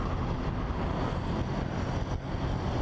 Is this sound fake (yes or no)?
no